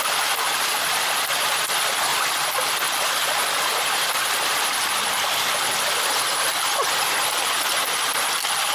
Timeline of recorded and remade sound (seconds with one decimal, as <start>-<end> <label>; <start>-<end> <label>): 0.0-8.7 recorded